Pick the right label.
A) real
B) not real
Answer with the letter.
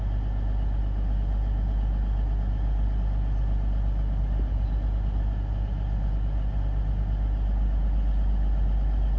A